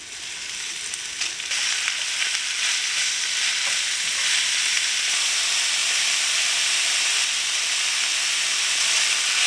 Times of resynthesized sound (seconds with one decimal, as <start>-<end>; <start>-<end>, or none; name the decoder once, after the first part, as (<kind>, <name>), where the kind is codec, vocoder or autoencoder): none